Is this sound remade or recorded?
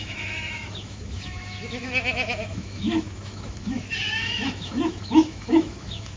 remade